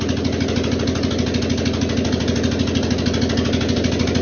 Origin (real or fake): real